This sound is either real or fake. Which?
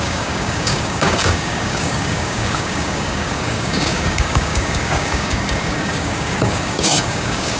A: fake